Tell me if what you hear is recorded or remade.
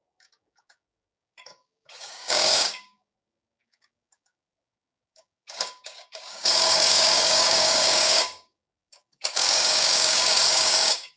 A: remade